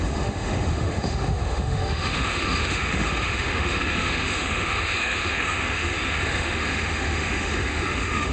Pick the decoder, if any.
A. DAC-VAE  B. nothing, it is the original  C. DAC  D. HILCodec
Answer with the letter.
A